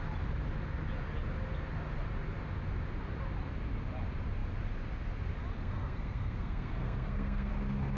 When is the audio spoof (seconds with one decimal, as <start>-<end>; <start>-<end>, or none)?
5.6-7.5